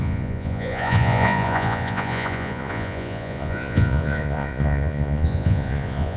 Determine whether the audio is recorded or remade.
remade